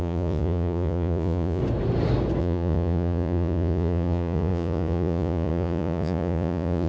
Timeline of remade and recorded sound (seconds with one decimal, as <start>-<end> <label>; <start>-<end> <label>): 0.0-1.6 remade; 1.6-2.4 recorded; 2.4-6.9 remade